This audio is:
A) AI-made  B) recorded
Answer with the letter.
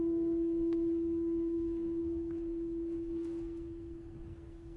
A